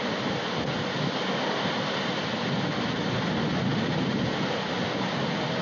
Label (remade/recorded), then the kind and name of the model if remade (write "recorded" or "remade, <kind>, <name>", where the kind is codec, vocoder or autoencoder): recorded